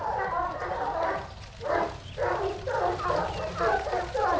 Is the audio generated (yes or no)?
no